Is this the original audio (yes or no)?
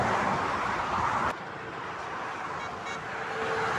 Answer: yes